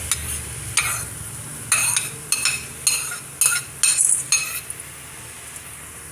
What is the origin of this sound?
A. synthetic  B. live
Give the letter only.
B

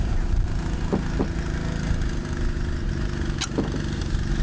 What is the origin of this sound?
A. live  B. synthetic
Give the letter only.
A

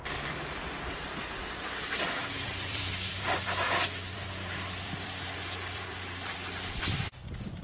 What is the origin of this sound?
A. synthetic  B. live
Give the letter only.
A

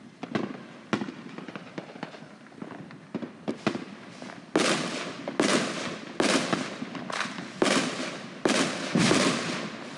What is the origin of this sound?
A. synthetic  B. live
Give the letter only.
B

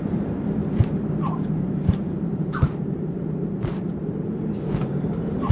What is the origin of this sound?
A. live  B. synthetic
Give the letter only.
B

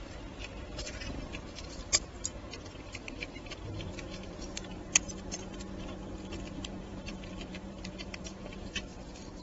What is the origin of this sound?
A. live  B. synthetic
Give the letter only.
B